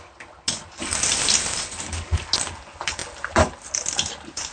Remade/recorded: recorded